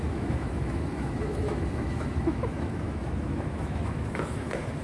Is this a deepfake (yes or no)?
yes